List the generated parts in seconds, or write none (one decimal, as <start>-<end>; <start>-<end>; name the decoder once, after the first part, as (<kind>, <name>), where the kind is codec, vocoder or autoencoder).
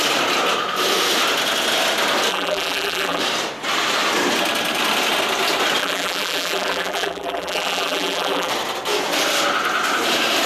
2.3-3.2 (vocoder, BigVGAN v2); 5.8-8.5